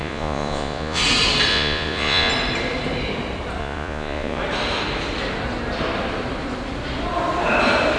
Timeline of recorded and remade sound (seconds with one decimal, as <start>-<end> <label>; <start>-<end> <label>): 0.0-1.0 remade; 1.0-1.5 recorded; 1.5-2.3 remade; 2.3-3.6 recorded; 3.6-4.4 remade; 4.4-8.0 recorded